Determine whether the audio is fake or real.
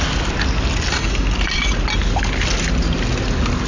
real